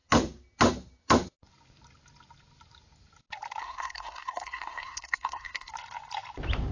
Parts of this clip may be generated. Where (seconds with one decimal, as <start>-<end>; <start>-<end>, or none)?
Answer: 3.6-5.7

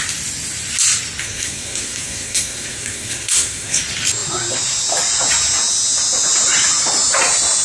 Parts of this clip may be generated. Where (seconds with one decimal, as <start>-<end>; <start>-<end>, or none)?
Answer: 1.2-3.8

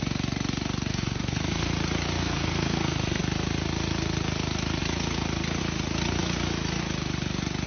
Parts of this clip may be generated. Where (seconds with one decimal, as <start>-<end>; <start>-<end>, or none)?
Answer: 0.9-1.7; 2.2-3.2

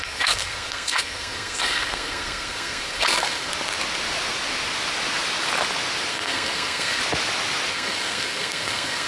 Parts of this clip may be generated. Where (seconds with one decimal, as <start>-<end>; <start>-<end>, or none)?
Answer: 0.0-3.5; 6.1-7.0; 7.7-9.1